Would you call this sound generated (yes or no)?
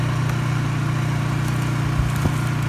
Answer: no